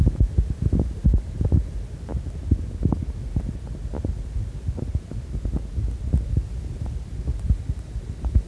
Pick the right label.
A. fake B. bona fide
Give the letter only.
B